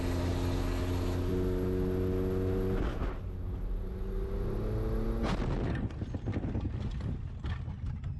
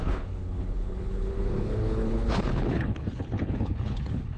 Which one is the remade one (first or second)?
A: second